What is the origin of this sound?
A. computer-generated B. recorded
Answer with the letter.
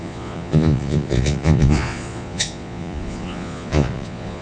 A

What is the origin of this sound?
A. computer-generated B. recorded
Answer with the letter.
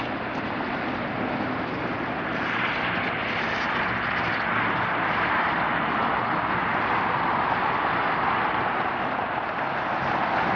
B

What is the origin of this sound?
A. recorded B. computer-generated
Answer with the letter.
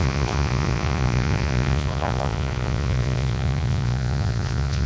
B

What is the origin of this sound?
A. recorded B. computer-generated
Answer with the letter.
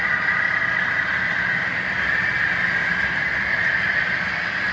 A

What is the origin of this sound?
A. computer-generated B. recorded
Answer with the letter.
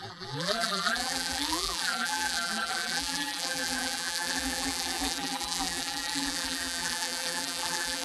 A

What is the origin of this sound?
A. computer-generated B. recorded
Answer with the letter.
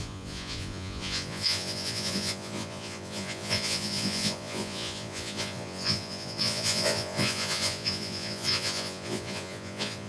A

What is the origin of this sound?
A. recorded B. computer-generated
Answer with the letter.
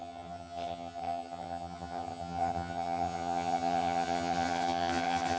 B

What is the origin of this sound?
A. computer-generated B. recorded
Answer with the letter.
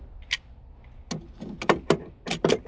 B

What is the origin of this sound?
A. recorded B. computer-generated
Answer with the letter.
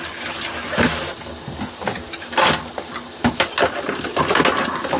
A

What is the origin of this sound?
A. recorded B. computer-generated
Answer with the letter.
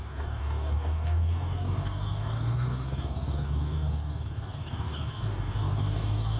B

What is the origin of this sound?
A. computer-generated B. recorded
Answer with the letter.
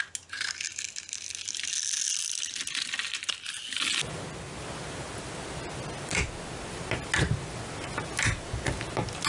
B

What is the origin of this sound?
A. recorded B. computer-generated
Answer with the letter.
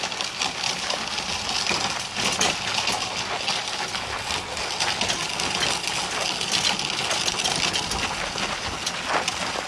A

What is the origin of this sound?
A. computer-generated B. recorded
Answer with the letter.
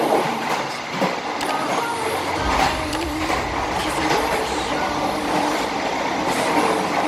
B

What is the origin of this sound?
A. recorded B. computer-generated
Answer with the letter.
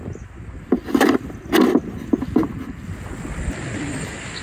A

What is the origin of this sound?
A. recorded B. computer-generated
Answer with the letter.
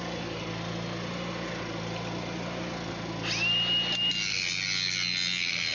A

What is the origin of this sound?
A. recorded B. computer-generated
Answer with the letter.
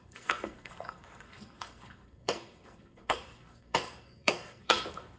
B